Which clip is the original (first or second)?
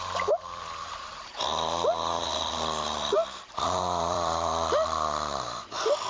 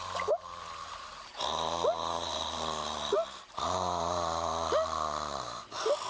second